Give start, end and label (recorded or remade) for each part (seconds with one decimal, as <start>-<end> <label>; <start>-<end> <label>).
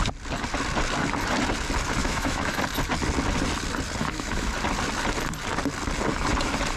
0.0-2.0 recorded; 2.0-2.6 remade; 2.6-4.0 recorded; 4.0-4.5 remade; 4.5-6.8 recorded